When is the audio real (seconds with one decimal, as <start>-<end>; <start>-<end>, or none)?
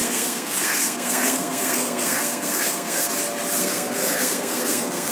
3.1-3.6